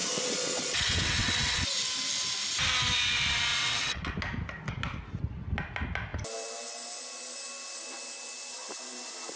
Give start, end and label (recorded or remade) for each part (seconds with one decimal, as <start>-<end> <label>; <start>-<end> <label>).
0.0-1.8 remade; 1.8-3.5 recorded; 3.5-4.1 remade; 4.1-9.4 recorded